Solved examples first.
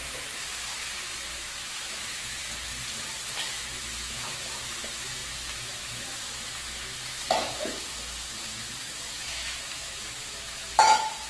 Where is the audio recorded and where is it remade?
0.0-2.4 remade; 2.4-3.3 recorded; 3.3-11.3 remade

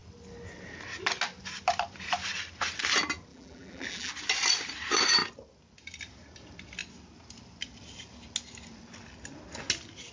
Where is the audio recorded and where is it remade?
0.0-3.3 recorded; 3.3-4.1 remade; 4.1-10.1 recorded

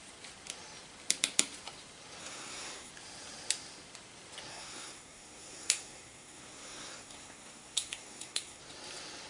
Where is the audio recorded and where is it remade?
0.0-2.2 recorded; 2.2-2.9 remade; 2.9-4.5 recorded; 4.5-8.6 remade; 8.6-9.3 recorded